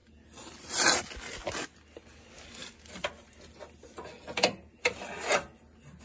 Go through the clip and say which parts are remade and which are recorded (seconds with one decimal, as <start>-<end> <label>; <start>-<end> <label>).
0.0-6.0 recorded